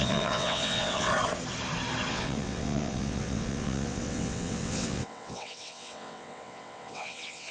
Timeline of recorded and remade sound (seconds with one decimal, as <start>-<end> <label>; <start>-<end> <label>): 0.0-1.1 remade; 1.1-2.1 recorded; 2.1-7.5 remade